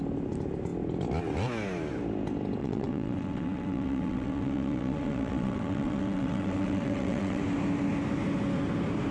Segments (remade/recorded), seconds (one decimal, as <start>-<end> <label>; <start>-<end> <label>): 0.0-2.6 recorded; 2.6-7.4 remade; 7.4-9.1 recorded